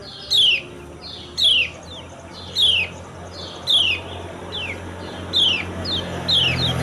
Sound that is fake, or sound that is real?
real